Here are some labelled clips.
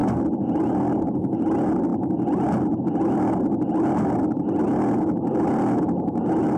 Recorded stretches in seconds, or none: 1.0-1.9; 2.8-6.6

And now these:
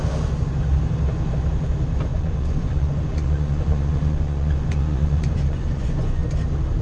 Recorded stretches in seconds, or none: 0.0-2.1; 6.2-6.8

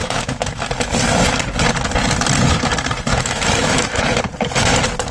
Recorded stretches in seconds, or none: 0.6-3.1; 4.2-5.1

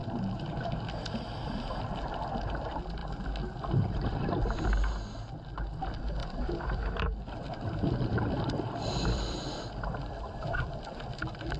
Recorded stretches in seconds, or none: 0.7-6.2; 10.8-11.6

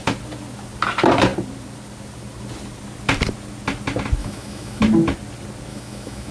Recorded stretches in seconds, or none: 0.0-4.2; 4.8-5.7